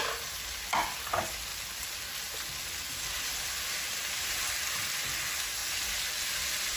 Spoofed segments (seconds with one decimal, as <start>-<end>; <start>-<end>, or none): none